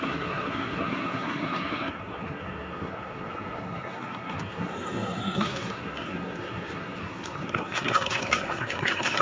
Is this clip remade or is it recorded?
remade